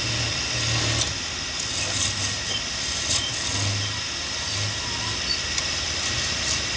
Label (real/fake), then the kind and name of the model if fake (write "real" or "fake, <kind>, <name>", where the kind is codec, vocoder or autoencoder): real